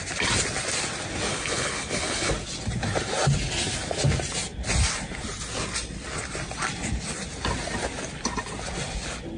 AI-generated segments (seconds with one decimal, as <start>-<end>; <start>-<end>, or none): 1.3-2.3